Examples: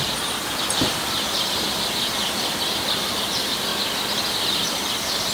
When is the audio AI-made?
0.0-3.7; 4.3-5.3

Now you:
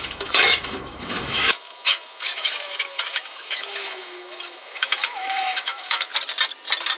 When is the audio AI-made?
0.0-6.1

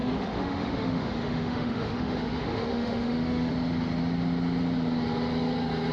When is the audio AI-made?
0.0-3.5